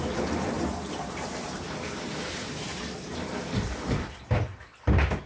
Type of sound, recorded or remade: remade